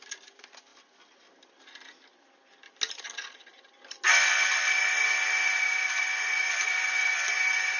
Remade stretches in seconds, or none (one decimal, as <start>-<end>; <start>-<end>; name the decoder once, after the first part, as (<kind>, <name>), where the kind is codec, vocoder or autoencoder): none